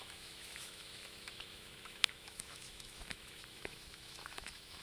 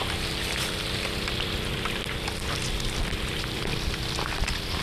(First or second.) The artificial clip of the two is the first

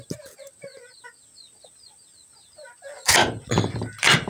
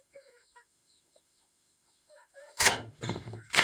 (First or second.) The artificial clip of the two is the second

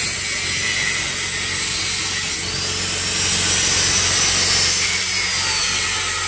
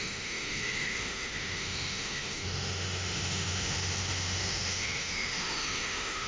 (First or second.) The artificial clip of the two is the second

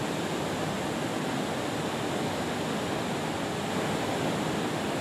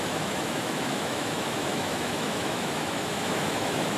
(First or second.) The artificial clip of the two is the second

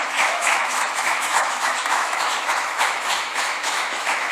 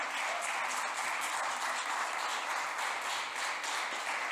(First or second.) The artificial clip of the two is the first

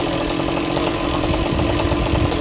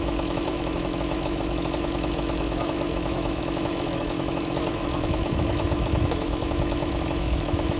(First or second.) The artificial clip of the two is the second